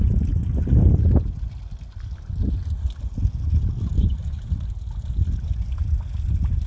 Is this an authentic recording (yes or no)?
yes